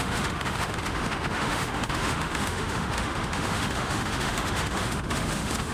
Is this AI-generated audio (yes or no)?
yes